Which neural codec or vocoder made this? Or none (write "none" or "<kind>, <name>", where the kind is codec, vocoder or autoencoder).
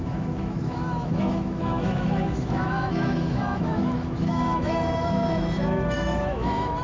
autoencoder, DAC-VAE